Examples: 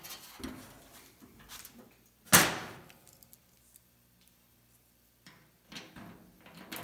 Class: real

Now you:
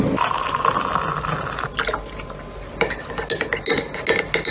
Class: real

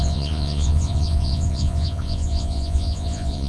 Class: fake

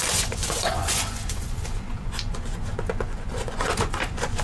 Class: fake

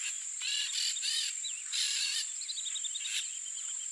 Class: real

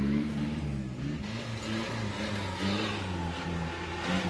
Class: real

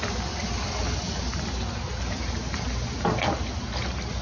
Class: real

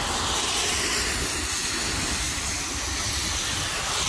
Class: real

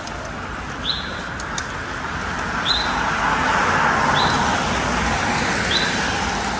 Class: real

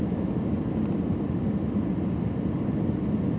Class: real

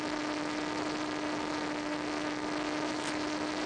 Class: real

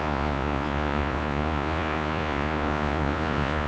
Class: fake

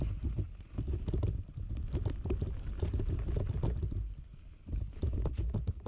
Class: real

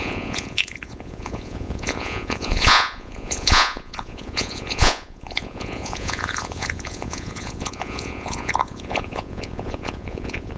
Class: fake